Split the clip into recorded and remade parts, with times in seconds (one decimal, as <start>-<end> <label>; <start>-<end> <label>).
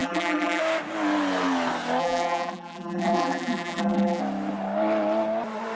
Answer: 0.0-0.6 remade; 0.6-2.0 recorded; 2.0-4.2 remade; 4.2-5.7 recorded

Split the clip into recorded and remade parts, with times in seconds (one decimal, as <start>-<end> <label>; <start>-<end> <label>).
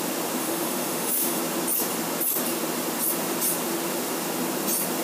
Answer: 0.0-0.4 recorded; 0.4-1.4 remade; 1.4-5.0 recorded